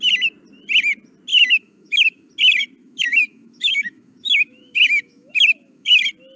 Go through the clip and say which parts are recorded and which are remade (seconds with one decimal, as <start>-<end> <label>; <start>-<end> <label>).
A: 0.0-1.3 recorded; 1.3-2.3 remade; 2.3-2.8 recorded; 2.8-6.0 remade; 6.0-6.4 recorded